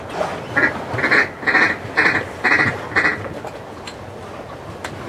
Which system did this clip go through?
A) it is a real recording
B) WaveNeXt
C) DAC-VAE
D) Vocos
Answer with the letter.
A